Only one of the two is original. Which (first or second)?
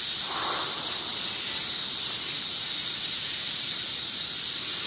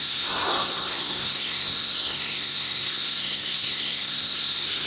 first